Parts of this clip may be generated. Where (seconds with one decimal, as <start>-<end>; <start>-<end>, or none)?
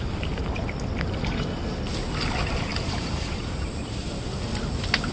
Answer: 2.7-3.9